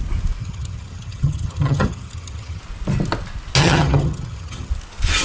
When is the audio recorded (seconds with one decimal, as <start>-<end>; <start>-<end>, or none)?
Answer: 0.0-0.4; 2.6-3.6; 4.7-5.2